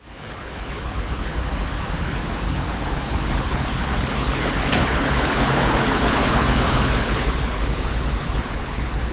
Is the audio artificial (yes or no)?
yes